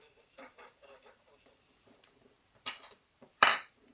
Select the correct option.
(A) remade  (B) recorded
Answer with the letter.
A